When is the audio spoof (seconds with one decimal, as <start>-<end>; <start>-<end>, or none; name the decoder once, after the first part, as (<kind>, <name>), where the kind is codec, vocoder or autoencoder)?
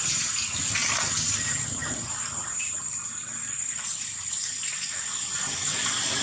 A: none